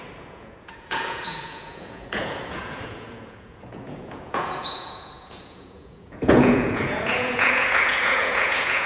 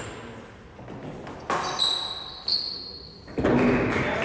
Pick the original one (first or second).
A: second